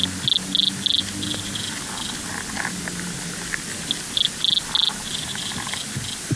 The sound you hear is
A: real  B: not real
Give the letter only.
A